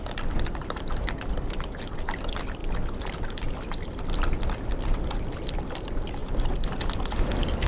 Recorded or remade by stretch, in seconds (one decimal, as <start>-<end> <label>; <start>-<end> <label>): 0.0-7.7 recorded